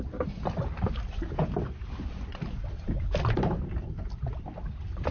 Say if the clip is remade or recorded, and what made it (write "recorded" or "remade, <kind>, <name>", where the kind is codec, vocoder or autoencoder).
recorded